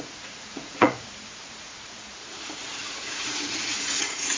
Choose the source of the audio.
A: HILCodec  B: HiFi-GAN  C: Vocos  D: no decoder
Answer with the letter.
C